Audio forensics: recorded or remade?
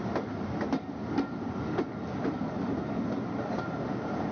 recorded